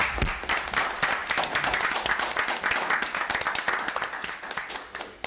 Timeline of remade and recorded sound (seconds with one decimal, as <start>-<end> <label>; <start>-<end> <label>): 0.0-5.3 recorded